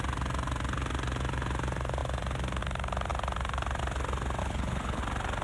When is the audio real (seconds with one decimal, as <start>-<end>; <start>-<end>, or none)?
0.0-4.4; 5.0-5.4

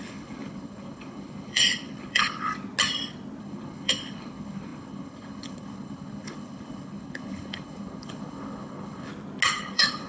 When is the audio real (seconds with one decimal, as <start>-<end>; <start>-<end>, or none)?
2.5-3.4; 9.1-9.6